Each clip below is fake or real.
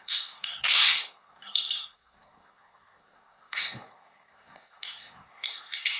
fake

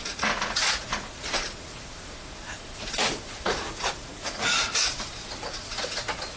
fake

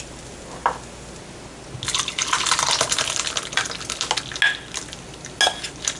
real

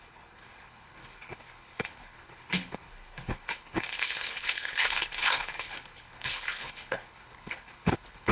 fake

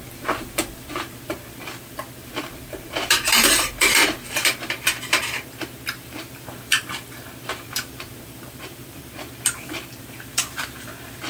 fake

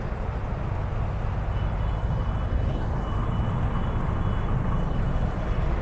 real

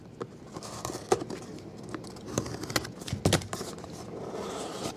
real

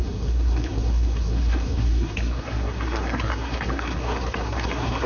fake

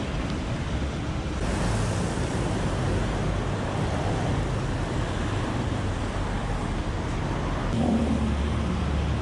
real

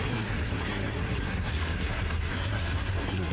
fake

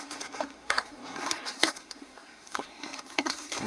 fake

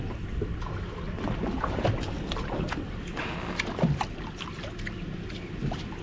real